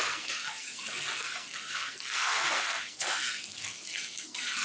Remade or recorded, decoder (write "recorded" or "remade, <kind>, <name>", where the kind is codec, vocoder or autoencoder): remade, codec, SNAC